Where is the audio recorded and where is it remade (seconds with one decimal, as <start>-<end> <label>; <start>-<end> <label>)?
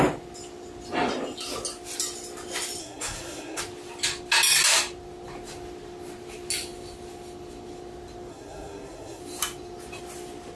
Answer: 0.0-2.8 recorded; 2.8-3.6 remade; 3.6-8.3 recorded; 8.3-9.2 remade; 9.2-10.6 recorded